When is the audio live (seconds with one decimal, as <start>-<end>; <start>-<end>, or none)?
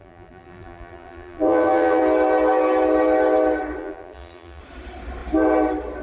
2.0-3.8; 4.6-6.0